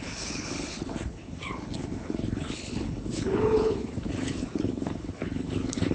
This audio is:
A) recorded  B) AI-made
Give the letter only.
B